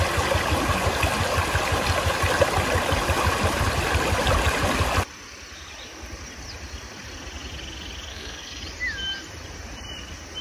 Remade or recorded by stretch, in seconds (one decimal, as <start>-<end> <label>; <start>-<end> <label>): 0.0-8.1 recorded; 8.1-8.6 remade; 8.6-10.4 recorded